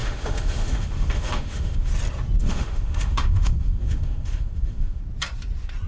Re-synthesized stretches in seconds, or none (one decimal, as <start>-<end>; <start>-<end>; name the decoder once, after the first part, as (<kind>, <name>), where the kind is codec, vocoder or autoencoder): 0.0-1.9 (autoencoder, DAC-VAE); 2.4-5.0